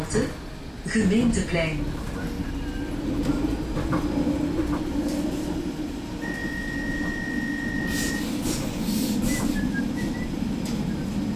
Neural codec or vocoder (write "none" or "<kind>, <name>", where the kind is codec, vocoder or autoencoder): none